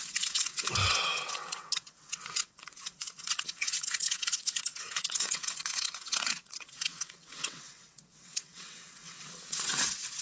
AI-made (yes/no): yes